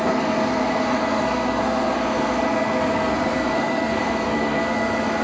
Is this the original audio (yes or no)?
no